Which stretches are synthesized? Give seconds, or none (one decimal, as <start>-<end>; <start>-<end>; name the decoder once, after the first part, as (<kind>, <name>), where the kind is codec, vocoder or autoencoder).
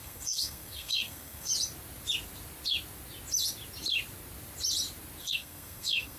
0.0-1.5 (codec, SNAC); 5.2-6.2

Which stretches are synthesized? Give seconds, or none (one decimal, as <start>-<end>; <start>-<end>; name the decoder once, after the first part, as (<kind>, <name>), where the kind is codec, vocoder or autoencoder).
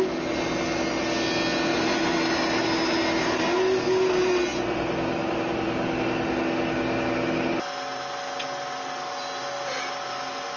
none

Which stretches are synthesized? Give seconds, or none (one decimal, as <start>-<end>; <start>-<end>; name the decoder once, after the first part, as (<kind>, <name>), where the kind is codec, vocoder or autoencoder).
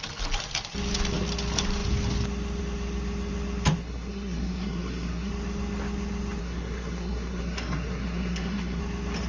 3.8-5.3 (codec, SNAC); 6.4-8.8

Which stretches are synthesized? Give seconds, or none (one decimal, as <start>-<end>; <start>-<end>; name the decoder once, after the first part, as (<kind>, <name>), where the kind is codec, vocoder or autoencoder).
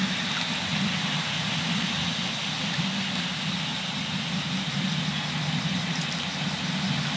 0.7-3.1 (vocoder, BigVGAN v2)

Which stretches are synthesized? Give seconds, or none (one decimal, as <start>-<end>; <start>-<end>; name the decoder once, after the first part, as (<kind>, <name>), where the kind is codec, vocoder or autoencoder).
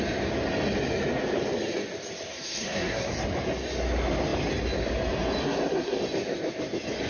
2.3-3.1 (codec, SNAC); 5.4-6.0